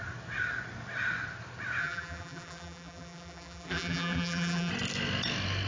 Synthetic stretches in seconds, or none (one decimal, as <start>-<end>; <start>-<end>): 1.8-4.7